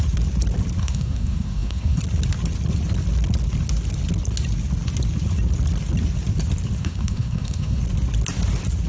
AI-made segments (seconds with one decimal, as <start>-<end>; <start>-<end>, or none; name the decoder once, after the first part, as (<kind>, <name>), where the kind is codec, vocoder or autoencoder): 0.8-2.0 (codec, SNAC); 6.8-7.8

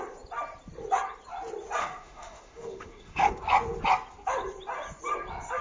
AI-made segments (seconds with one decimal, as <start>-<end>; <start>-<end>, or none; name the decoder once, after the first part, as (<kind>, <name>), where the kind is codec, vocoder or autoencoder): 1.8-3.3 (autoencoder, DAC-VAE)

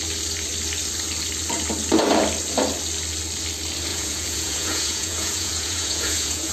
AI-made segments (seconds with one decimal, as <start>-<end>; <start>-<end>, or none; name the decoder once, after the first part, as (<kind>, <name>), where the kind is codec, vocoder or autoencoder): 3.9-6.5 (vocoder, Vocos)

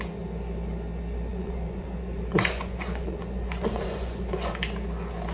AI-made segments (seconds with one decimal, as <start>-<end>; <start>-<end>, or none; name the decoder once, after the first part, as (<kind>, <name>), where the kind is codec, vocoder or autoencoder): 1.3-4.5 (vocoder, Vocos)

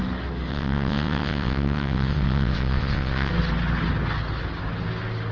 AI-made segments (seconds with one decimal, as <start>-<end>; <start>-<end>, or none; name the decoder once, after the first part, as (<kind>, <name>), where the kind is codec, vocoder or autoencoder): 0.5-3.3 (vocoder, WaveNeXt)

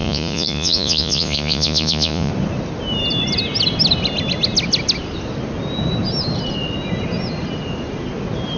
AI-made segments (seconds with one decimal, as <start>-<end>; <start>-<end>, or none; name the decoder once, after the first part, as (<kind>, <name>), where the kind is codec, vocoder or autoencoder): 0.0-2.3 (vocoder, Vocos)